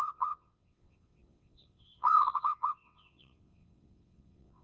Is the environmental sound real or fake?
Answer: fake